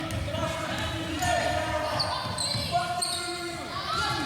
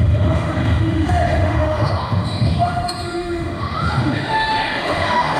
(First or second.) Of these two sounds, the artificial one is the second